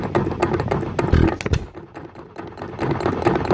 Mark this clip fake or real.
real